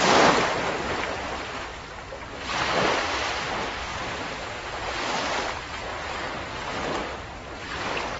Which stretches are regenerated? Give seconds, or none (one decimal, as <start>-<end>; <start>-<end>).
3.9-4.5